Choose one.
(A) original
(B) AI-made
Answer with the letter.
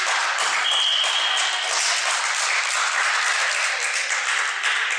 A